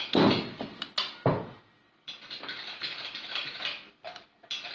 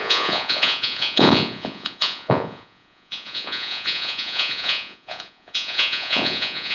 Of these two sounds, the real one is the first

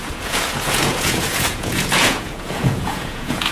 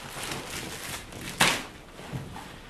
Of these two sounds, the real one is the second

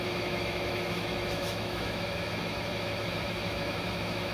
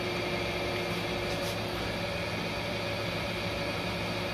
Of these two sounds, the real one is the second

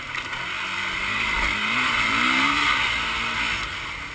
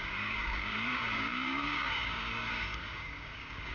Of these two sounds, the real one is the first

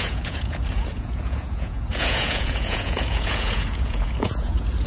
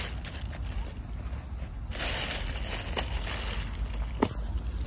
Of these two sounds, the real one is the second